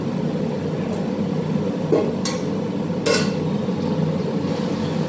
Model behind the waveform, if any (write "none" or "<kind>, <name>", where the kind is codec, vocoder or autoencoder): none